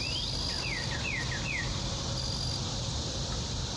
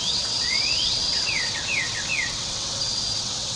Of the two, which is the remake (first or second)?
second